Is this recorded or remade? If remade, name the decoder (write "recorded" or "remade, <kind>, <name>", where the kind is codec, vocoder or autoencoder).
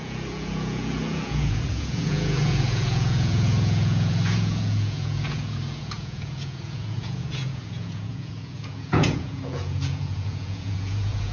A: remade, vocoder, Vocos